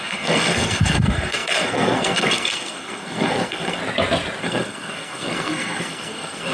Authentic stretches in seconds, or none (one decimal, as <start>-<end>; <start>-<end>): 3.8-4.4